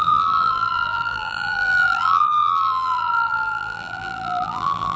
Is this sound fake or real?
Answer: fake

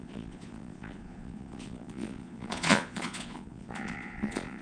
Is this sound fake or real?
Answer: fake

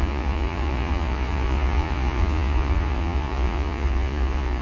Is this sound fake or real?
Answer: fake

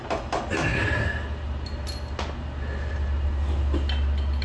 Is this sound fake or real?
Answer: real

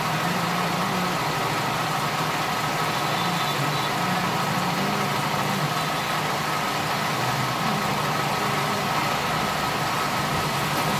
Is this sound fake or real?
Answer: real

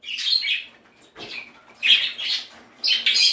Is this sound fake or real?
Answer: real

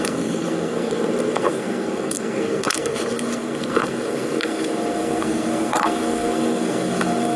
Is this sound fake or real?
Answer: fake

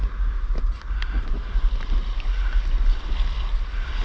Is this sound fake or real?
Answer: real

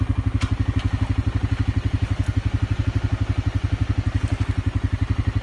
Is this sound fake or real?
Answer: real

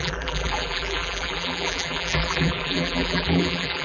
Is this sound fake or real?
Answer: fake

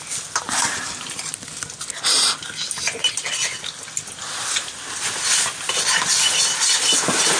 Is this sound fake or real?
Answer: real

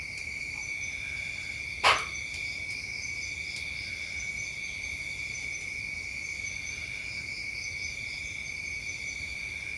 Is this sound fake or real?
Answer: real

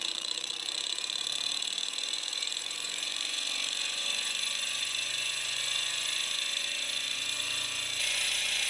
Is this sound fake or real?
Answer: fake